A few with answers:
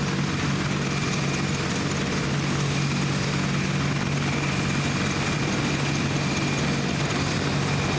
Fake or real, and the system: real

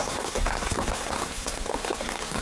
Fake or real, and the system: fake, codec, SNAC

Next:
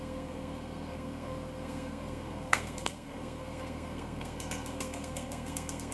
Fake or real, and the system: fake, codec, SNAC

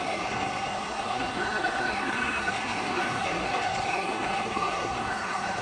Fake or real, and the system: fake, codec, SNAC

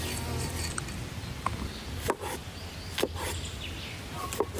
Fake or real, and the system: real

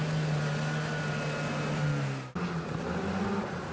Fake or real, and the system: real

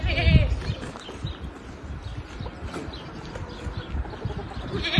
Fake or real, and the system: real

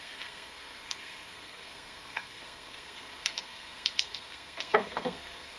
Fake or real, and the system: fake, codec, SNAC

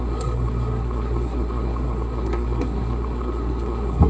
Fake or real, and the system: fake, codec, SNAC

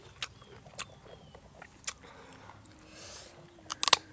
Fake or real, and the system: real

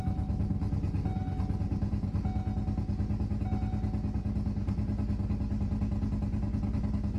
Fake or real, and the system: real